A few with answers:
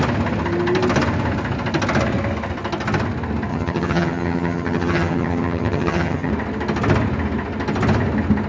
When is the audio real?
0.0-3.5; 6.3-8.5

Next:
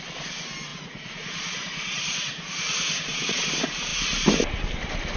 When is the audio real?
0.0-0.7; 3.4-5.2

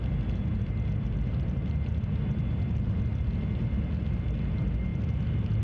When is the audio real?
0.0-5.6

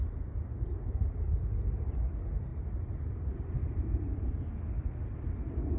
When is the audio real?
0.0-2.5; 4.2-5.8

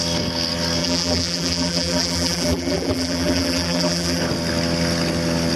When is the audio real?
0.0-0.8; 4.2-5.6

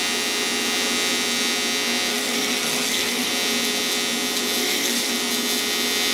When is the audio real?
0.0-2.1; 3.3-4.6; 5.1-6.1